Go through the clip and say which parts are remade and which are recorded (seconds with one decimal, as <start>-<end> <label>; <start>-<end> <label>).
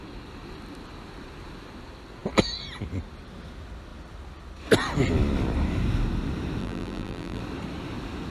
0.0-6.6 recorded; 6.6-7.4 remade; 7.4-8.3 recorded